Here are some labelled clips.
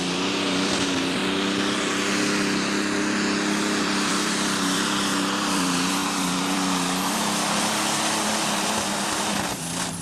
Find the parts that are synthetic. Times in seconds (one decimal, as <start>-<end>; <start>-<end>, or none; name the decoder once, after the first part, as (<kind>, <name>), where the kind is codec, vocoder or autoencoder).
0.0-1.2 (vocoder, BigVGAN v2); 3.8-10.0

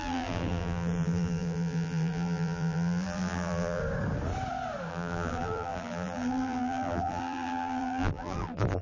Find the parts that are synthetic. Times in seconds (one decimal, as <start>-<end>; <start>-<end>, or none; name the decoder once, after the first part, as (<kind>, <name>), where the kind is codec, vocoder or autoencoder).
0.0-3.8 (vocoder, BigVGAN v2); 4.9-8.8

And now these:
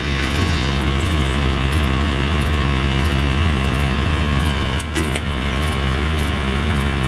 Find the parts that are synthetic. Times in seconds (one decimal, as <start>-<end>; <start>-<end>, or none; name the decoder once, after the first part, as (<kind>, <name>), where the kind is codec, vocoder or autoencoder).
0.0-7.1 (vocoder, Vocos)

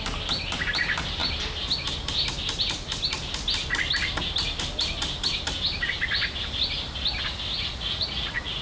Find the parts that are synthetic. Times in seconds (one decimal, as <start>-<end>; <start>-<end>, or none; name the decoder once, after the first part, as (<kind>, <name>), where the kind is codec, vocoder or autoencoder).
7.5-8.6 (vocoder, Vocos)